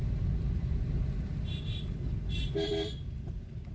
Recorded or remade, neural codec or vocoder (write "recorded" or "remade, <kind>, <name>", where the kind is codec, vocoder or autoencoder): recorded